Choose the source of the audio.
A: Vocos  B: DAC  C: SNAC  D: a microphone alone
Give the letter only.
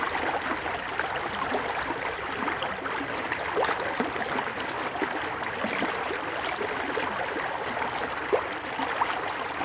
D